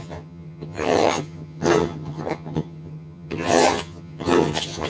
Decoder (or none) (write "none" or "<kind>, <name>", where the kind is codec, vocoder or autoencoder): vocoder, HiFi-GAN